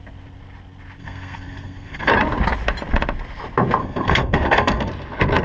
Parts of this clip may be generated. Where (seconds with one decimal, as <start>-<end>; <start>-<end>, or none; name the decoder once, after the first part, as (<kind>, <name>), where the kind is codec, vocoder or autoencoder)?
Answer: 1.0-2.1 (codec, SNAC); 3.8-4.9